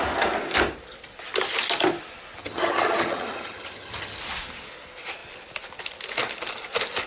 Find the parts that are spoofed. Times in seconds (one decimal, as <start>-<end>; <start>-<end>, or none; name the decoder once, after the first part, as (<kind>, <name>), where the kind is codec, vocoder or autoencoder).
2.4-4.2 (vocoder, HiFi-GAN)